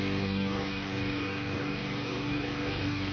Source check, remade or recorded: remade